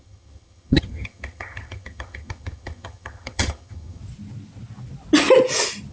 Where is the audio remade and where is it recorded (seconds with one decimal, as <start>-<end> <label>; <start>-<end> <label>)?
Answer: 0.0-4.0 remade; 4.0-5.9 recorded